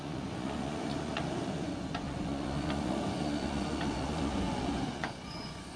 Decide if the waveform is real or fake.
fake